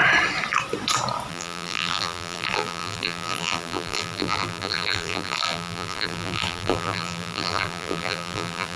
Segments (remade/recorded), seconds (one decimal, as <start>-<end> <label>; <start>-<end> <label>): 0.0-1.3 recorded; 1.3-8.8 remade